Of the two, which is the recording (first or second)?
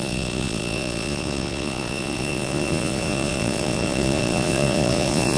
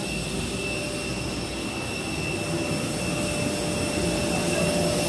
second